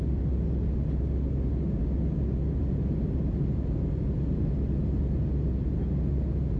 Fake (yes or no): no